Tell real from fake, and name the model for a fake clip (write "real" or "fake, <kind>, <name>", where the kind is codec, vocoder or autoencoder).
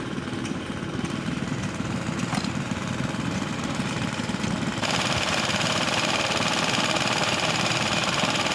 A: fake, vocoder, BigVGAN v2